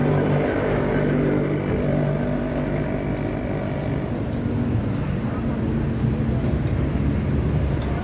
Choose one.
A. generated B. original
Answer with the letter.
B